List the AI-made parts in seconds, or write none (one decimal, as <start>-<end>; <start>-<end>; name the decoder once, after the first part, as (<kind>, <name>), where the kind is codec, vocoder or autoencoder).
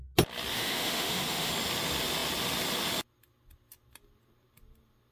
0.5-1.5 (autoencoder, DAC-VAE)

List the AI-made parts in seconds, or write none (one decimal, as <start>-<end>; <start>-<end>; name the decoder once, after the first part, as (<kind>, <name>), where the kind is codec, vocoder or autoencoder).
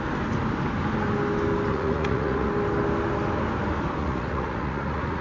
1.7-2.5 (vocoder, Vocos); 4.0-5.2